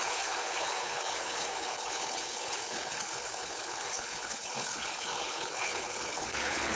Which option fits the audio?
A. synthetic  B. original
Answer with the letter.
A